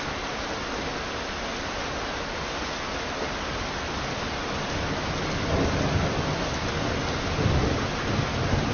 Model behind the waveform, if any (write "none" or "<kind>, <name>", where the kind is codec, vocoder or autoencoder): none